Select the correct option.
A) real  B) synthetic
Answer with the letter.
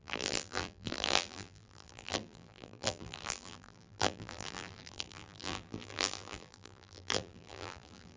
B